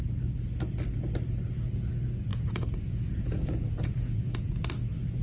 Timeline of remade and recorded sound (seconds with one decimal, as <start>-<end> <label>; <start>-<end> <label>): 0.0-2.3 recorded; 2.3-4.5 remade; 4.5-5.2 recorded